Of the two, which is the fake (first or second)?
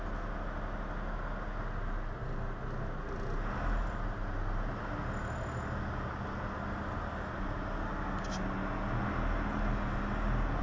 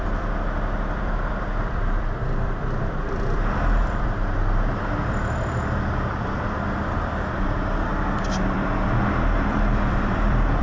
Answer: second